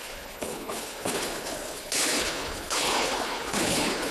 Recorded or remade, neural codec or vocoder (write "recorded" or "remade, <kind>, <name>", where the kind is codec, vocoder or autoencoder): remade, codec, HILCodec